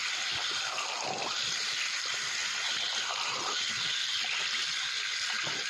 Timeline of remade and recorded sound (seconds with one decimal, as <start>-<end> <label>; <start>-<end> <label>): 0.0-0.5 remade; 0.5-5.7 recorded